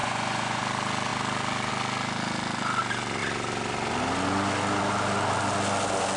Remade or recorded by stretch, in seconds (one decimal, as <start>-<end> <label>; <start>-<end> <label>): 0.0-0.6 remade; 0.6-6.2 recorded